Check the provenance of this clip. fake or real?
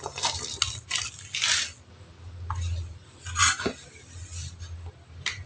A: real